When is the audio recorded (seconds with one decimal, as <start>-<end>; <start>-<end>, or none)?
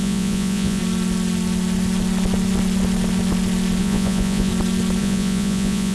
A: 0.8-3.8; 4.5-5.0